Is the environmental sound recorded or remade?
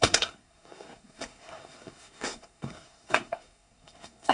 remade